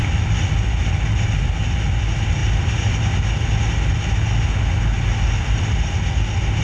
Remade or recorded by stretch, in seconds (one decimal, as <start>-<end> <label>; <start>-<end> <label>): 0.0-6.6 recorded